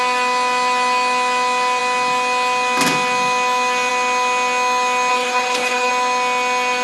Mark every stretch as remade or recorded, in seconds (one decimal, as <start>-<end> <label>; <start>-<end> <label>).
0.0-5.1 recorded; 5.1-5.9 remade; 5.9-6.8 recorded